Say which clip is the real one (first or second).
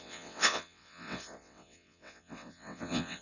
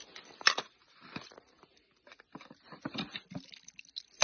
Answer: second